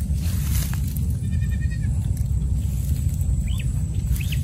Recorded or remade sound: recorded